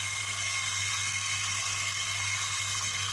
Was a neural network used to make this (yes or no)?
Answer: yes